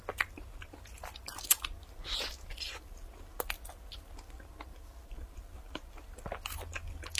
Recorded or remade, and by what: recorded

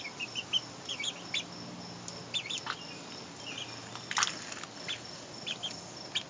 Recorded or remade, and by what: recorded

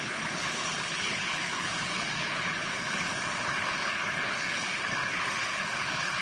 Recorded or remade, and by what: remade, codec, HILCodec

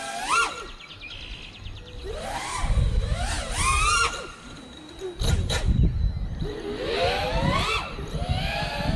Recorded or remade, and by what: recorded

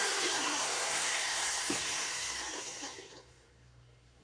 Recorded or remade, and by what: remade, codec, SNAC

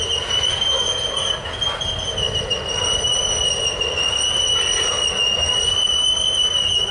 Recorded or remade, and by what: recorded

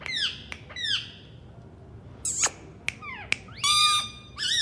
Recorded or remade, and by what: recorded